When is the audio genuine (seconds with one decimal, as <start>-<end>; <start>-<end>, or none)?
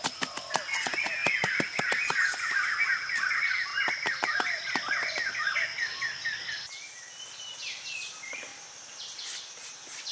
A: 0.0-10.1